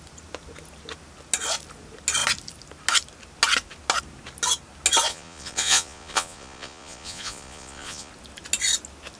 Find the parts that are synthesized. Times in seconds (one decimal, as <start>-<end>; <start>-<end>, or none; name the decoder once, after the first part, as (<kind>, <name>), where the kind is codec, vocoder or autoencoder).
5.1-8.1 (vocoder, Vocos)